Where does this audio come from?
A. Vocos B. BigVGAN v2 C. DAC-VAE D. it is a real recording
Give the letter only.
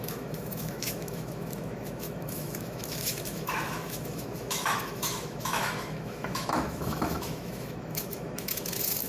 C